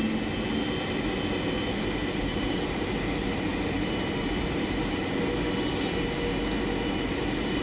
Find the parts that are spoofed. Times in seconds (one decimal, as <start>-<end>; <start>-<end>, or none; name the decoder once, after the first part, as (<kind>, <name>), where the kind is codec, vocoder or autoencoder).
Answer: 2.0-2.7 (vocoder, BigVGAN v2); 3.5-5.0